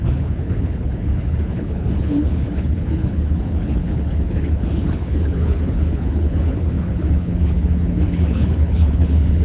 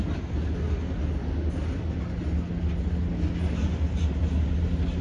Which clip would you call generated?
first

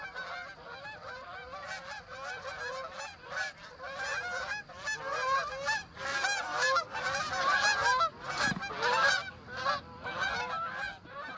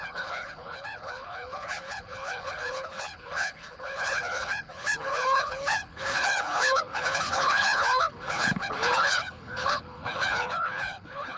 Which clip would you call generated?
second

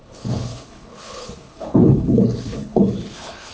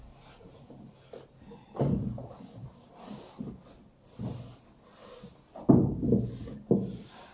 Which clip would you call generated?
first